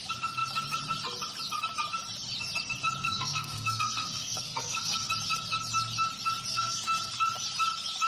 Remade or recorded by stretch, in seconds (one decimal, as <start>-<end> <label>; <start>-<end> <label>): 0.0-3.0 recorded; 3.0-5.1 remade; 5.1-6.5 recorded; 6.5-7.1 remade; 7.1-8.1 recorded